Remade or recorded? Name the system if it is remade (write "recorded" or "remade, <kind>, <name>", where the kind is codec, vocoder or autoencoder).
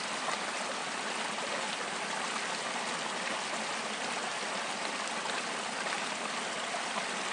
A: recorded